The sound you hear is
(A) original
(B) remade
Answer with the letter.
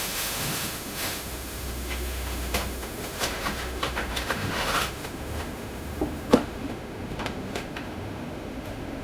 B